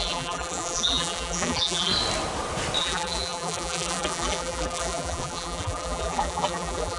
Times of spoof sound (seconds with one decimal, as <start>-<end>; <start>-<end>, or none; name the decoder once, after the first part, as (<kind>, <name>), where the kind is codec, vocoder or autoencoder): 0.0-1.9 (vocoder, BigVGAN v2); 2.8-7.0